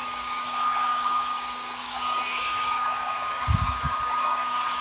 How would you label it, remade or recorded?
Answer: remade